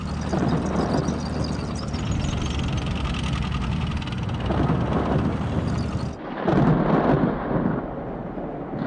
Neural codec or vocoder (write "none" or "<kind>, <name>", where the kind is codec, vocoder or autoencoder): none